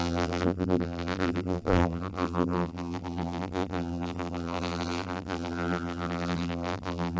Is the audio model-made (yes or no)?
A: yes